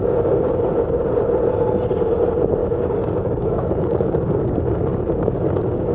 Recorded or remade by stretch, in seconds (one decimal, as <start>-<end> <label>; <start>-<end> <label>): 0.0-2.6 recorded; 2.6-5.4 remade; 5.4-5.9 recorded